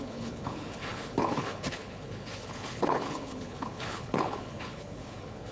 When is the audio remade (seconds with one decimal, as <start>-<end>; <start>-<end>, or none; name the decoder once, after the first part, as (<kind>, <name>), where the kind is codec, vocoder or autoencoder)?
0.0-5.5 (codec, HILCodec)